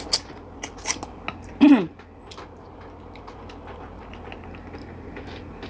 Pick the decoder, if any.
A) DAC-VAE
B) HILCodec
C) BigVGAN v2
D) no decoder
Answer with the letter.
D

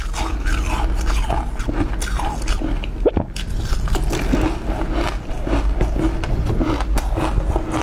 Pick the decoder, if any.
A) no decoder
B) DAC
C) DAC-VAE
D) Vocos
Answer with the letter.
A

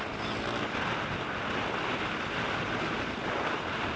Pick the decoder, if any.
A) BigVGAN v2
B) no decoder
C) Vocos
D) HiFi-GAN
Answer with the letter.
B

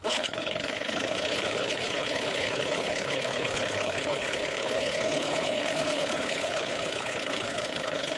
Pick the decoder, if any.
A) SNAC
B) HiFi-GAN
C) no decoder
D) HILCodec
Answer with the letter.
D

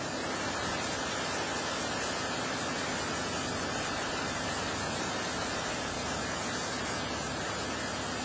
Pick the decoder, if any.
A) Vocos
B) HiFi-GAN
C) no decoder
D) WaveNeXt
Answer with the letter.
C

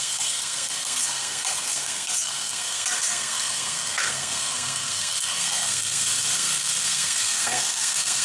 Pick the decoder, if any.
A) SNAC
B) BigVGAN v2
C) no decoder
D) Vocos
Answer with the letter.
A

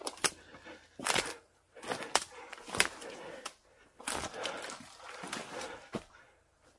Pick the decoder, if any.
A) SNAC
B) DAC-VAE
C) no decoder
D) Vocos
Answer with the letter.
C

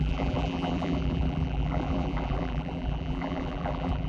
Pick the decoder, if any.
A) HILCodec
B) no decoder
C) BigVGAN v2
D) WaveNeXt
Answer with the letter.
C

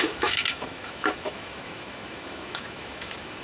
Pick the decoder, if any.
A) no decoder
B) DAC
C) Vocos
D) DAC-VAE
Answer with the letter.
D